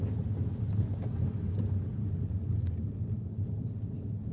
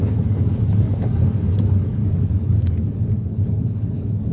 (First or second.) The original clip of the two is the first